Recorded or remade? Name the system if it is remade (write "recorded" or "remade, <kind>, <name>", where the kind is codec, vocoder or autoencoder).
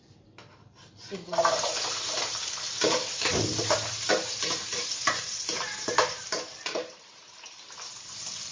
remade, vocoder, BigVGAN v2